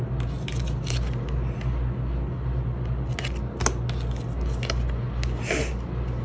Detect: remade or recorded recorded